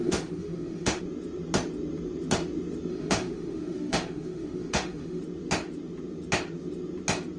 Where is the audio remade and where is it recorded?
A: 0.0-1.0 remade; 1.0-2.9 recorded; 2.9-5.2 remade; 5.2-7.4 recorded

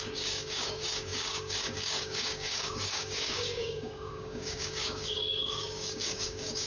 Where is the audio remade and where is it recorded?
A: 0.0-6.7 remade

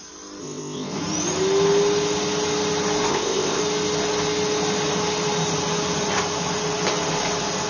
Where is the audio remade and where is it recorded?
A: 0.0-0.4 recorded; 0.4-1.0 remade; 1.0-3.1 recorded; 3.1-3.6 remade; 3.6-7.7 recorded

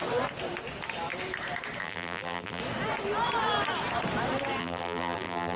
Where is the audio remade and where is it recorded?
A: 0.0-1.8 recorded; 1.8-2.6 remade; 2.6-4.6 recorded; 4.6-5.6 remade

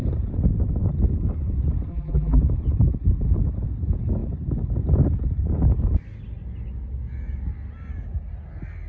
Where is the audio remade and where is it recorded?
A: 0.0-1.9 recorded; 1.9-2.4 remade; 2.4-8.9 recorded

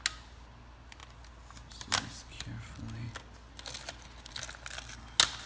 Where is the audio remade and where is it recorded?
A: 0.0-5.5 recorded